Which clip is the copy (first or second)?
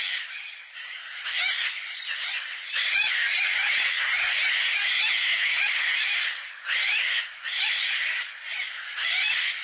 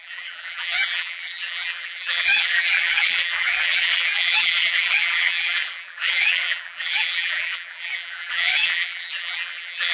second